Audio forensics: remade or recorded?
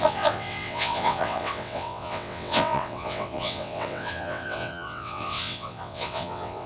remade